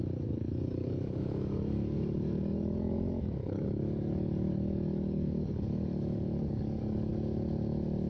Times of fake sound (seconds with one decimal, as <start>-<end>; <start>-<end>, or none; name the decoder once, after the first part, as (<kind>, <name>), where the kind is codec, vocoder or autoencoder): 0.0-7.1 (codec, DAC)